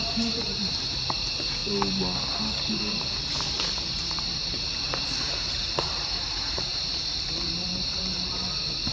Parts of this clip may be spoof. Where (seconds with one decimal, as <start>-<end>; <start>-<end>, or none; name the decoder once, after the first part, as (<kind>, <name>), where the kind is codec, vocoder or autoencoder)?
0.0-1.6 (vocoder, BigVGAN v2); 2.7-8.9